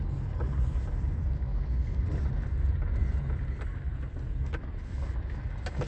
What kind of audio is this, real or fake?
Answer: real